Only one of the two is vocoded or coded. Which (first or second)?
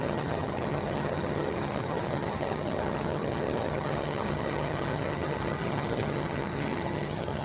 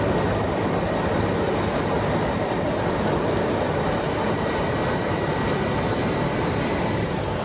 first